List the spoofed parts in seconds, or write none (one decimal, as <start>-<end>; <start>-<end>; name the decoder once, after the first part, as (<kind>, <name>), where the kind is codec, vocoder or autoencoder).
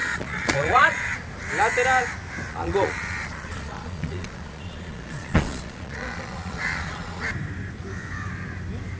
0.0-1.1 (vocoder, Vocos); 2.5-7.3